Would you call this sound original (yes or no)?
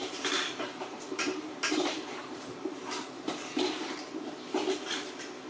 no